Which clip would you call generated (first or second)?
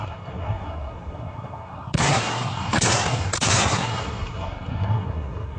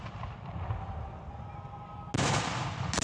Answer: first